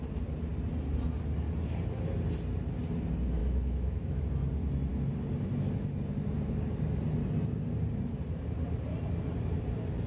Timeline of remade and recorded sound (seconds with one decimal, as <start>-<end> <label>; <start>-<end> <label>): 0.0-3.4 recorded; 3.4-4.2 remade; 4.2-10.1 recorded